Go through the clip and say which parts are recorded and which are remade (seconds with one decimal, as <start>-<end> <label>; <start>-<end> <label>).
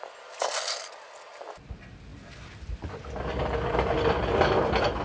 0.0-5.0 recorded